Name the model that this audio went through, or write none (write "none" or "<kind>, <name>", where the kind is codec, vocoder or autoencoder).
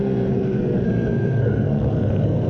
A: codec, SNAC